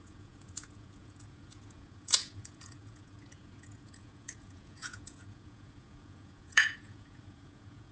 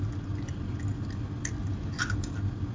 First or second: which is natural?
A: second